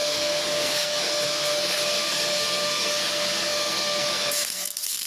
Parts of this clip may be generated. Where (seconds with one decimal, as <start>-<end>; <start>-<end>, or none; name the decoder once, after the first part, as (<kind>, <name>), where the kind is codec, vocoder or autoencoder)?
0.0-5.1 (codec, SNAC)